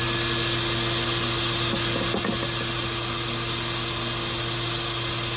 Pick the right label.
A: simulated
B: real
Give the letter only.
B